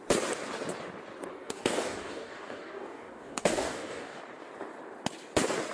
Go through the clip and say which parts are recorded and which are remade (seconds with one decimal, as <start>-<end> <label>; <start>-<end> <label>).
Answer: 0.0-1.3 recorded; 1.3-4.2 remade; 4.2-5.7 recorded